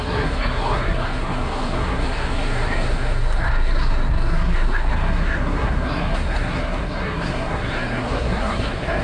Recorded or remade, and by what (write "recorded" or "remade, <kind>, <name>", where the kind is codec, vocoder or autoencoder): remade, codec, SNAC